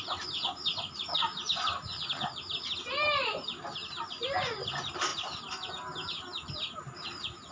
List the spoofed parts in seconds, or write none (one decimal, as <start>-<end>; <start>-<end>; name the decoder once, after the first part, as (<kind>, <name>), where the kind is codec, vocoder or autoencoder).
none